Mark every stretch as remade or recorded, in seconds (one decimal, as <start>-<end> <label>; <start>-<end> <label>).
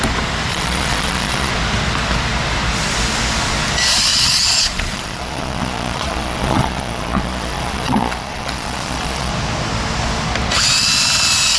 0.0-0.5 recorded; 0.5-1.5 remade; 1.5-4.1 recorded; 4.1-9.3 remade; 9.3-11.6 recorded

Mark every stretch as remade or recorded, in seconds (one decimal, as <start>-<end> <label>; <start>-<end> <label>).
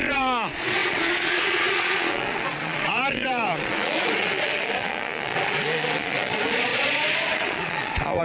0.0-8.2 remade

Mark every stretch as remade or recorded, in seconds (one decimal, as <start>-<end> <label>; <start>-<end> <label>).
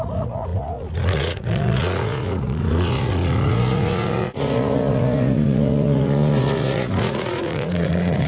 0.0-8.3 remade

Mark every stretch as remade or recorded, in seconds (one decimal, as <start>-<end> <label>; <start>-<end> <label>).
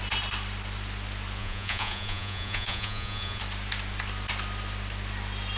0.0-1.4 recorded; 1.4-3.4 remade; 3.4-5.6 recorded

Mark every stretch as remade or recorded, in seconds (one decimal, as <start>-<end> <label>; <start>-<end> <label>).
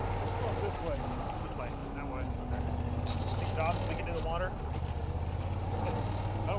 0.0-6.6 recorded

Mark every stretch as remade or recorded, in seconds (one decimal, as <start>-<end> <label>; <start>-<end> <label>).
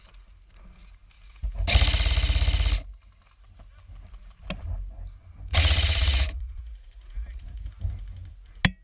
0.0-5.5 recorded; 5.5-7.7 remade; 7.7-8.8 recorded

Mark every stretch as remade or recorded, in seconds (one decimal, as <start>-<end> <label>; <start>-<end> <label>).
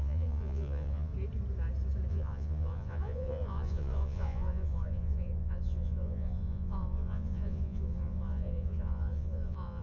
0.0-1.1 remade; 1.1-2.1 recorded; 2.1-9.8 remade